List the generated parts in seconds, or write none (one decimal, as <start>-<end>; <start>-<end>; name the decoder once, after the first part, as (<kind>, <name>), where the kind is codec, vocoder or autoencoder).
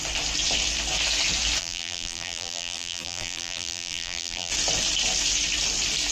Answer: 1.6-4.5 (vocoder, BigVGAN v2)